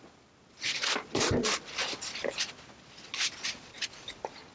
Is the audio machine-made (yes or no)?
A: no